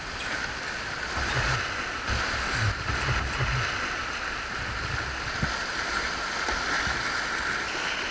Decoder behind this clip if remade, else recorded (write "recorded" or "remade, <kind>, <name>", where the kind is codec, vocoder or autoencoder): recorded